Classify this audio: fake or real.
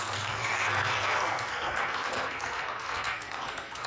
fake